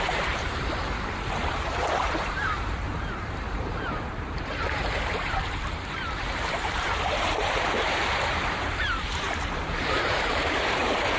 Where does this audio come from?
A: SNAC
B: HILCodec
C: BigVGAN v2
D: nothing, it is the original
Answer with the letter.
C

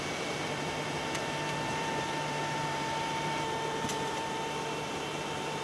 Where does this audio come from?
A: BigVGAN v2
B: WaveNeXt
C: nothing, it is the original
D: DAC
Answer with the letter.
A